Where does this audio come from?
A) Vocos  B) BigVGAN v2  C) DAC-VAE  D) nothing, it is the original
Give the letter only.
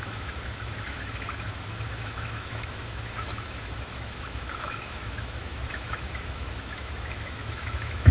C